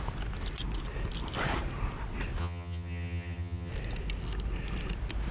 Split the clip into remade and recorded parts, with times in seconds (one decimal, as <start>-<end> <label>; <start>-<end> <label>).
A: 0.0-2.4 recorded; 2.4-3.7 remade; 3.7-5.3 recorded